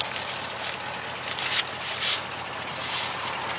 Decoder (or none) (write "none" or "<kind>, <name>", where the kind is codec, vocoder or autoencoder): none